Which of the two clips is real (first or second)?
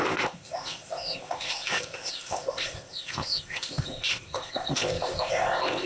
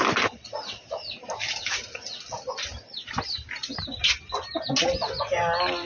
second